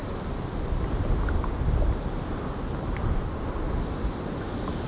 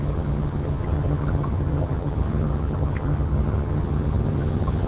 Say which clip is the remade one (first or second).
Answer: second